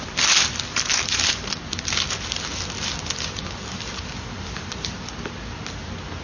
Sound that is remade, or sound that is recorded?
recorded